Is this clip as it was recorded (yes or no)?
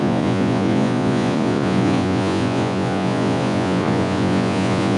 no